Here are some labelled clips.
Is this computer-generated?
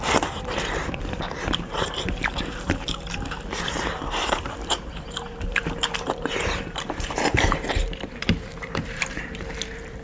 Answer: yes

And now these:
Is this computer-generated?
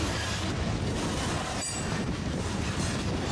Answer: no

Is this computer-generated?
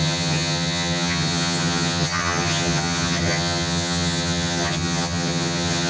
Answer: yes